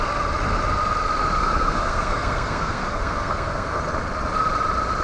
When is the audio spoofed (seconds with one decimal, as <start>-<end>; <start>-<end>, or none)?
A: 1.4-3.8